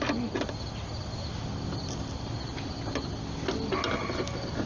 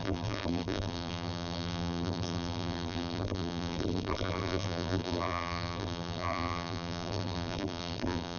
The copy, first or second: second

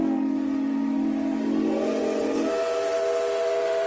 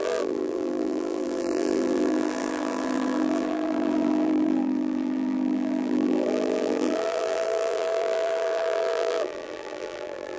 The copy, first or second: second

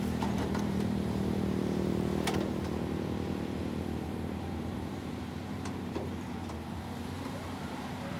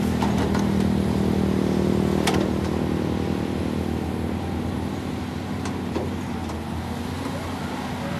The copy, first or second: first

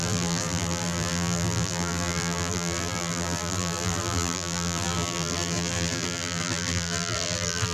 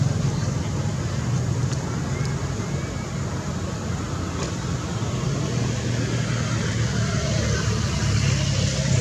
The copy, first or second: first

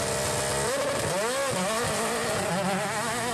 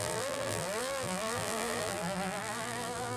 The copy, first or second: second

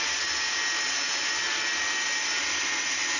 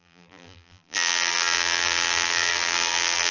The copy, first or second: second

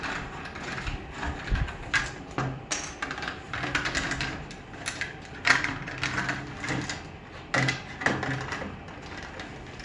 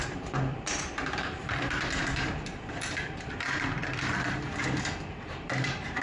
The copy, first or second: second